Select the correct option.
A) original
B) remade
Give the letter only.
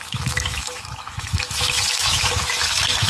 B